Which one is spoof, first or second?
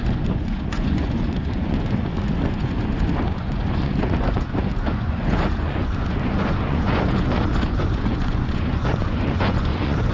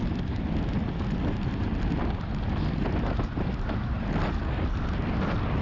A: first